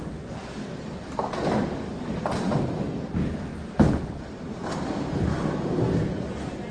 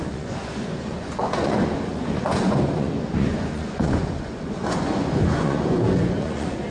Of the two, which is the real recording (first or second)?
first